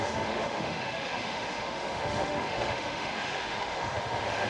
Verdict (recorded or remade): remade